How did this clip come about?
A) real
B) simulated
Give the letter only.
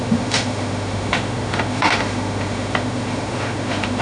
B